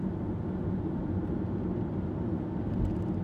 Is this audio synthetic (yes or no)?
no